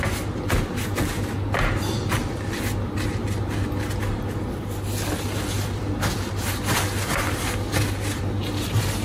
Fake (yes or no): no